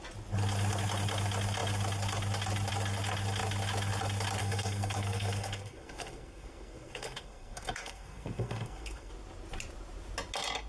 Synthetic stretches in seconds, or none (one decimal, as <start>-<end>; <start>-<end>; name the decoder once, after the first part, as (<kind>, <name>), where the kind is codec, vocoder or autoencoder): 4.4-9.1 (codec, SNAC)